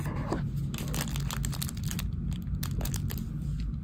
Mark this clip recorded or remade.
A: recorded